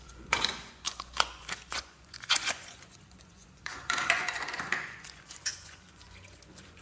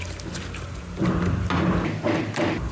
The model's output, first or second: first